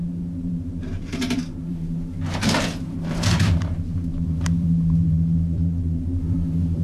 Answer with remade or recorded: remade